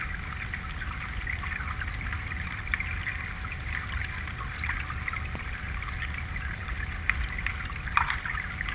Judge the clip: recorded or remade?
recorded